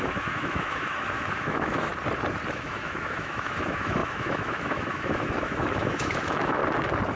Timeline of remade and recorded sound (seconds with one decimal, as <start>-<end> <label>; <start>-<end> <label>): 0.0-1.9 remade; 1.9-2.5 recorded; 2.5-6.6 remade; 6.6-7.2 recorded